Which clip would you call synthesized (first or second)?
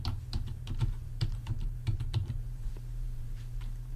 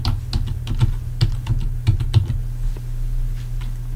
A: first